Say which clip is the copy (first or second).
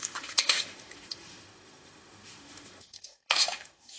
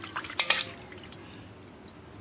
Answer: first